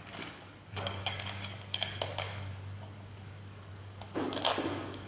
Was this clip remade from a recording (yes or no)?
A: yes